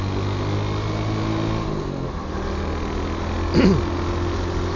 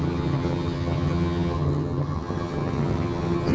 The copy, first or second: second